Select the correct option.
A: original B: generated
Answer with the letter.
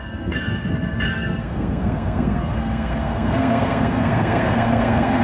B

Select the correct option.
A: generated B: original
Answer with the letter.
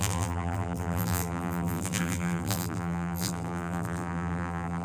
A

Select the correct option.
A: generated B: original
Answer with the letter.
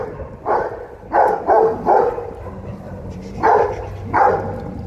B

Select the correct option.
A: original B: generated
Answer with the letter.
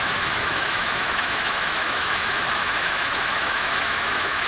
B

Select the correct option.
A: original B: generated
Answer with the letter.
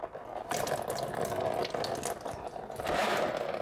A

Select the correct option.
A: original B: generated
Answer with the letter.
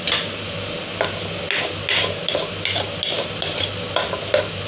A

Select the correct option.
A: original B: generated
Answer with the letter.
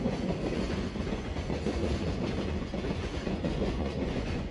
B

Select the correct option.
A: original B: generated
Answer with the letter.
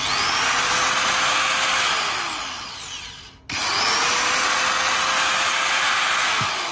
A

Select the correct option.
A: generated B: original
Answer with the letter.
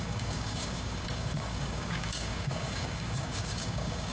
A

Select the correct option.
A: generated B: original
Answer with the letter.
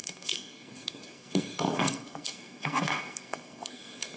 A